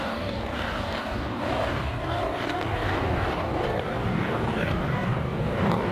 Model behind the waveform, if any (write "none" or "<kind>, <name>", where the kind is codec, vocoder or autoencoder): codec, DAC